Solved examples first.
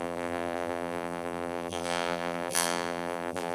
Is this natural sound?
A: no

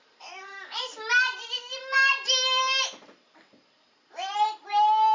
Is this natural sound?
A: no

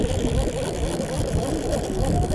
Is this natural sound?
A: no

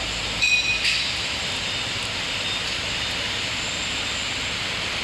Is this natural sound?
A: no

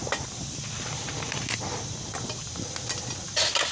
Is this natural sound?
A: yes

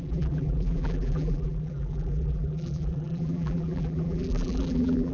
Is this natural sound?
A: no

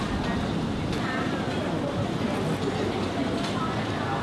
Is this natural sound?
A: yes